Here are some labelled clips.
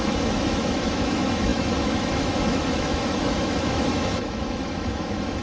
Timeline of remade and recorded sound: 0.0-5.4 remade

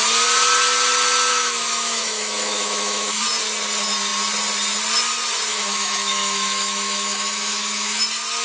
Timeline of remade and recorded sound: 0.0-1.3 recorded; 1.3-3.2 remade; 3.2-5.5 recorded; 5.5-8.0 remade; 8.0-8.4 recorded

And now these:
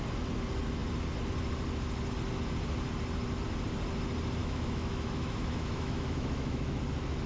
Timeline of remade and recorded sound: 0.0-4.4 recorded; 4.4-6.8 remade; 6.8-7.3 recorded